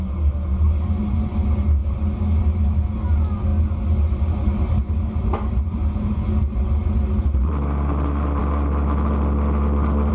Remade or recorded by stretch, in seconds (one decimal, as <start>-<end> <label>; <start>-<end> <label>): 0.0-10.1 recorded